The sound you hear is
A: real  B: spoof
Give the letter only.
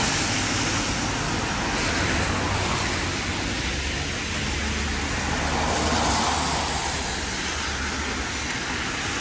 A